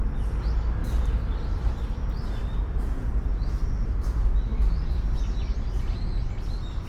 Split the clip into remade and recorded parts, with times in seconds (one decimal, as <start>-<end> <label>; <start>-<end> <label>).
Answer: 0.0-4.5 recorded; 4.5-5.2 remade; 5.2-6.9 recorded